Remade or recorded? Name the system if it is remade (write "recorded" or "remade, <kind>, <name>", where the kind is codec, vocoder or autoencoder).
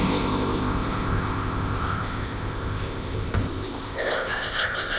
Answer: remade, codec, ZipCodec